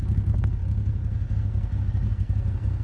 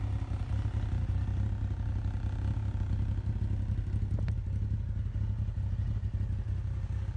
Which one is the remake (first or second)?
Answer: first